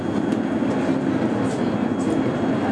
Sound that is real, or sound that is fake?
real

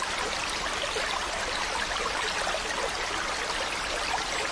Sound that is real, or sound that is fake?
real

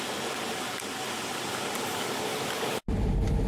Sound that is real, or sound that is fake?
fake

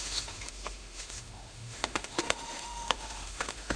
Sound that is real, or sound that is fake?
fake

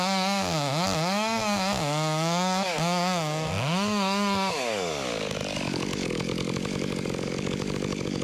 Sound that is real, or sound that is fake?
fake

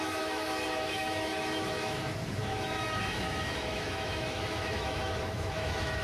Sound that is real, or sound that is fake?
fake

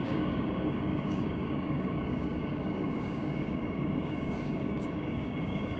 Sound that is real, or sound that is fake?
fake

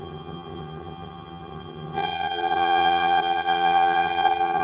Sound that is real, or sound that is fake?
fake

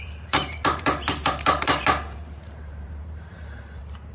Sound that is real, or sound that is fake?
fake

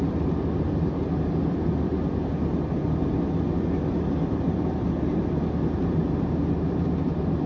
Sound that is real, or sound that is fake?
real